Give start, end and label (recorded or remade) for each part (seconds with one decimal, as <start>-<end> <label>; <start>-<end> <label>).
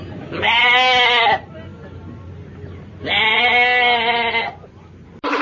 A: 0.0-5.4 recorded